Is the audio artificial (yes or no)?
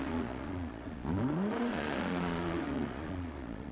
yes